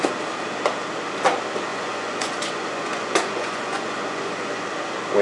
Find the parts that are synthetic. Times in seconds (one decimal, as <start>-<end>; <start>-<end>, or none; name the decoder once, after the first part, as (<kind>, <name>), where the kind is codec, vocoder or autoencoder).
1.7-4.7 (vocoder, Vocos)